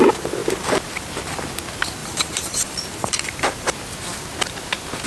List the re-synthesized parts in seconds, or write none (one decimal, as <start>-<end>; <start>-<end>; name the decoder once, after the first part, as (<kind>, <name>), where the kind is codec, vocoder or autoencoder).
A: 2.0-3.7 (vocoder, BigVGAN v2)